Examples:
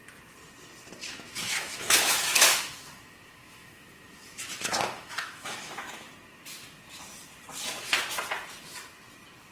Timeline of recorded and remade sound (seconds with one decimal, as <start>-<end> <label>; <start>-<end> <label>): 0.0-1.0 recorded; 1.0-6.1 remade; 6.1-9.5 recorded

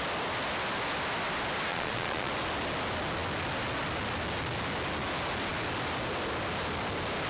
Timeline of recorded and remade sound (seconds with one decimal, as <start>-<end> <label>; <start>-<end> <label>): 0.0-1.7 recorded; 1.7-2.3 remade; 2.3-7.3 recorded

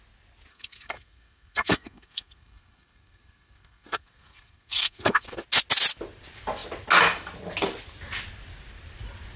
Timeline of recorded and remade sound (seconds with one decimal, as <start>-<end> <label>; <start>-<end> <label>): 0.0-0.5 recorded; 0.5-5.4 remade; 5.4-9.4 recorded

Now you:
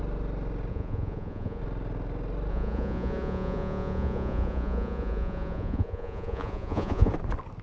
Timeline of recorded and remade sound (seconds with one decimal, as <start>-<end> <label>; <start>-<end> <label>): 0.0-0.7 recorded; 0.7-1.6 remade; 1.6-2.5 recorded; 2.5-7.1 remade; 7.1-7.6 recorded

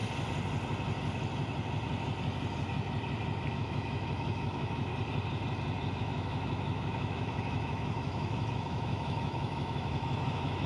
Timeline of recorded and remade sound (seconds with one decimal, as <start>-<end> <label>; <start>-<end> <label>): 0.0-3.5 recorded; 3.5-4.9 remade; 4.9-6.0 recorded; 6.0-10.7 remade

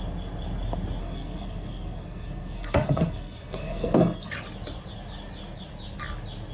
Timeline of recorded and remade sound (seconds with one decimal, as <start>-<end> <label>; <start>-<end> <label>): 0.0-1.0 recorded; 1.0-4.3 remade; 4.3-6.5 recorded

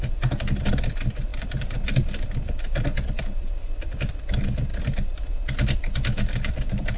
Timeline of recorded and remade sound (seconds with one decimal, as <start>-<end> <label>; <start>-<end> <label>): 0.0-7.0 remade

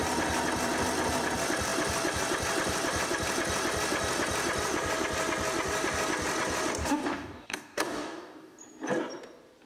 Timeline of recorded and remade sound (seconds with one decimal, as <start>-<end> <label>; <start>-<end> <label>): 0.0-6.8 recorded; 6.8-8.6 remade; 8.6-9.7 recorded